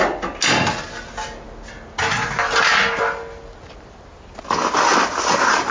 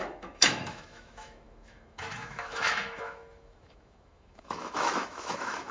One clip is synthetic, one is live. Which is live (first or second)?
first